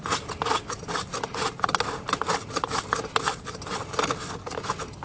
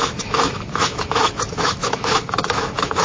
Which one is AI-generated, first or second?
second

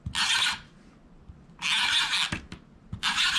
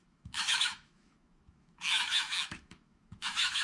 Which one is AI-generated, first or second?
second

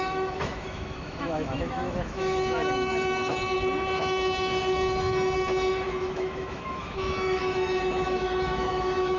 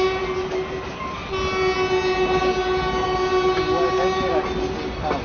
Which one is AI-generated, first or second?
first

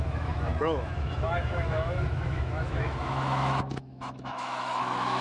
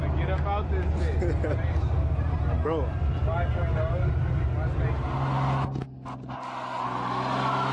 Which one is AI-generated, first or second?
first